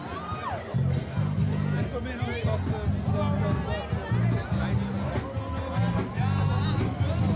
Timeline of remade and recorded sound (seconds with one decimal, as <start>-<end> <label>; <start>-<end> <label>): 0.0-7.4 recorded